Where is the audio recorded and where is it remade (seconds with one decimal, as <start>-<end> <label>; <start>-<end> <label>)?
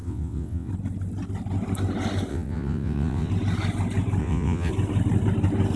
0.0-0.7 remade; 0.7-2.3 recorded; 2.3-3.3 remade; 3.3-4.2 recorded; 4.2-4.7 remade; 4.7-5.8 recorded